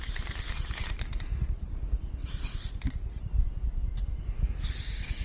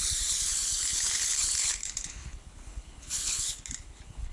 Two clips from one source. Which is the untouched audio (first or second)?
first